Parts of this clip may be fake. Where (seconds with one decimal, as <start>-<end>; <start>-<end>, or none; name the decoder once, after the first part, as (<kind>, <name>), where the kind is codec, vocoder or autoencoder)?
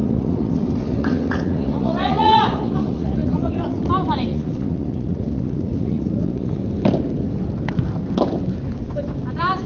0.0-3.5 (vocoder, Vocos); 4.3-6.6